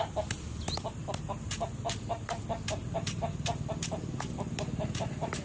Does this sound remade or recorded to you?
recorded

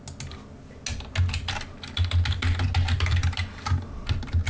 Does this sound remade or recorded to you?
recorded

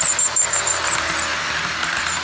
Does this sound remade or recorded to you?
recorded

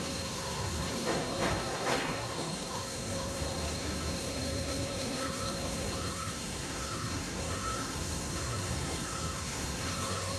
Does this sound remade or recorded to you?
remade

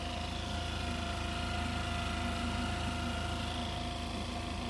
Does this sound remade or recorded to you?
recorded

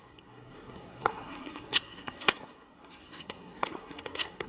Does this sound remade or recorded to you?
remade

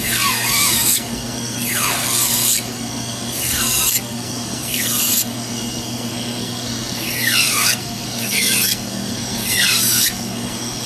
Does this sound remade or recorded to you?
remade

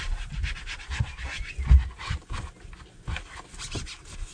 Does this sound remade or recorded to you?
recorded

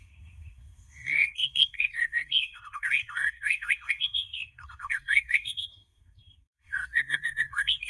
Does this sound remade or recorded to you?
remade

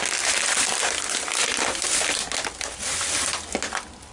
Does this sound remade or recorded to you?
recorded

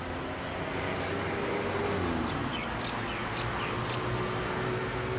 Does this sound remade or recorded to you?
recorded